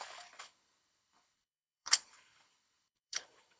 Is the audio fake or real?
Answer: fake